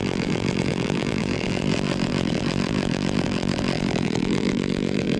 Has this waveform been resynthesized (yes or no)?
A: yes